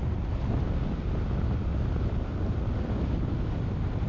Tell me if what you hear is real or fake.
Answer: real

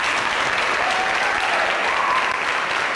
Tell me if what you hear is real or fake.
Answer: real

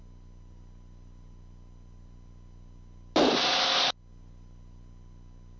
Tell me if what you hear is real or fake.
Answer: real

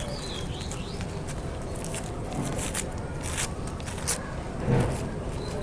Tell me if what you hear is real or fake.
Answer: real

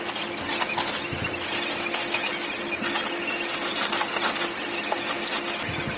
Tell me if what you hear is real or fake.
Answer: real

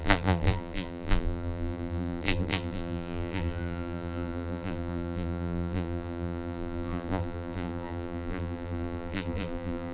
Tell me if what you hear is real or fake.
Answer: fake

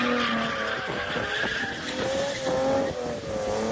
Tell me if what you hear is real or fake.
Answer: real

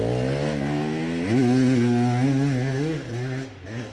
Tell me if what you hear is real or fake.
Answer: real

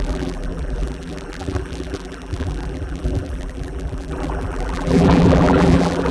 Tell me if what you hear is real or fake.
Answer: fake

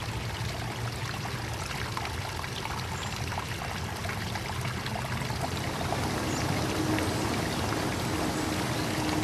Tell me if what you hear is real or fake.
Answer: real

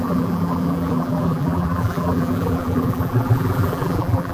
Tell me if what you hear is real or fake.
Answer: fake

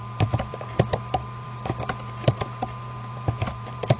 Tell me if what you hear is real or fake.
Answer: fake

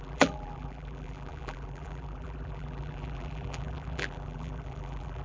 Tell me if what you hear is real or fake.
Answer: fake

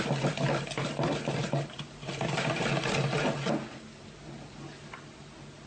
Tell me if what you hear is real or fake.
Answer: fake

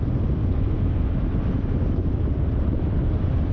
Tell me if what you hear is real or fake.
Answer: fake